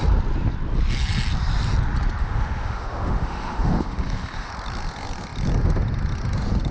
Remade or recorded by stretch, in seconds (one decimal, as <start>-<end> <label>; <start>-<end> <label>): 0.0-2.2 recorded; 2.2-4.5 remade; 4.5-6.7 recorded